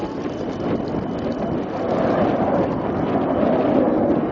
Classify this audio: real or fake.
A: real